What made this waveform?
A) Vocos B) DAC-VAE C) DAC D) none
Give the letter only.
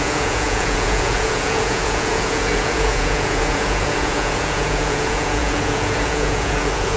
A